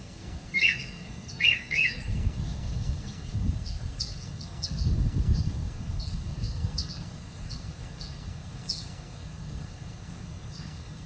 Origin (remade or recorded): remade